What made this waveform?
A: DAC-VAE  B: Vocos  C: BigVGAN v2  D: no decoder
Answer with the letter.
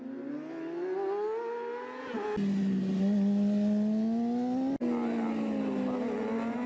D